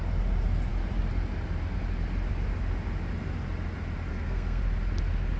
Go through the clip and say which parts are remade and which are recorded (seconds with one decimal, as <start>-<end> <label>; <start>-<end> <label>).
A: 0.0-4.1 recorded; 4.1-4.6 remade; 4.6-5.4 recorded